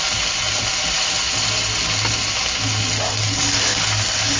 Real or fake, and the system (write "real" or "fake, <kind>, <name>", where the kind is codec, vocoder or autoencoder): real